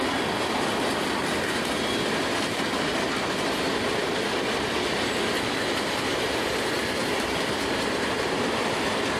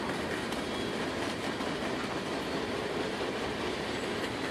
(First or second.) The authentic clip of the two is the second